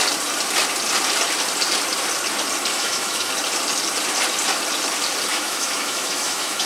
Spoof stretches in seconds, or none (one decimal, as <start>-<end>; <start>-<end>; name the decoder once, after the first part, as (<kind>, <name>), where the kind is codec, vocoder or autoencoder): 2.7-3.3 (autoencoder, DAC-VAE); 5.3-6.7